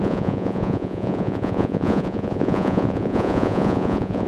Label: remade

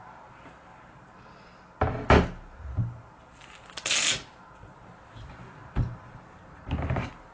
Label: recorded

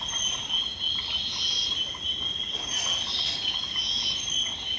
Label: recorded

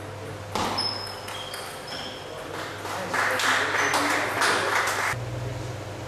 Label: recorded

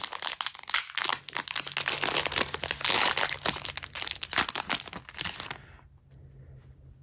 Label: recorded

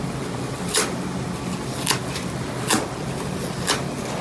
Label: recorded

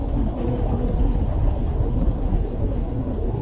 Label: remade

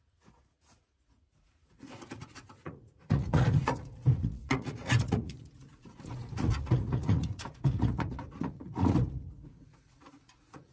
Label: remade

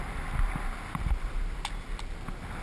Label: recorded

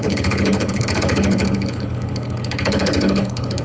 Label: remade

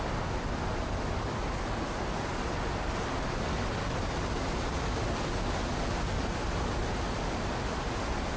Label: recorded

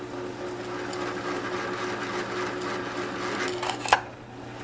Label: recorded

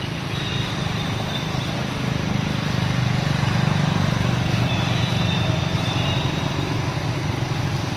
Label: recorded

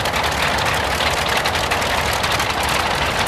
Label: recorded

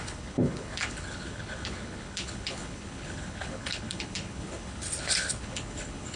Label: remade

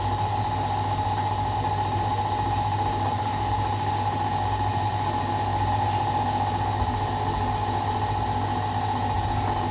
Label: recorded